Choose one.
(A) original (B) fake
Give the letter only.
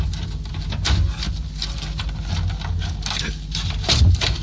A